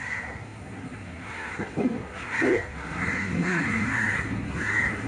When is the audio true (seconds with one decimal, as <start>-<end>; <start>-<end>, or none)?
none